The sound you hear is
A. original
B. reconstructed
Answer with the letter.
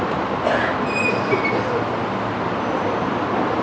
A